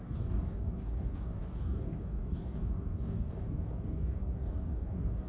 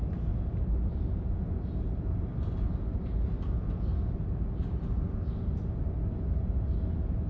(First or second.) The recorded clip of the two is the second